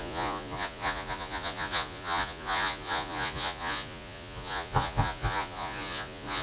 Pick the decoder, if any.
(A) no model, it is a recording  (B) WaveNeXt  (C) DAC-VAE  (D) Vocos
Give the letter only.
D